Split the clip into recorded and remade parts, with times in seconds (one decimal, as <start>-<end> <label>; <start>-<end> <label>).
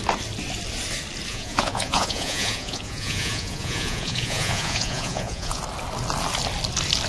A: 0.0-1.3 recorded; 1.3-5.6 remade; 5.6-7.1 recorded